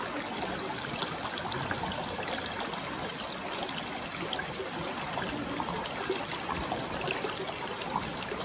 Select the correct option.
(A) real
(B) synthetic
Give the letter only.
A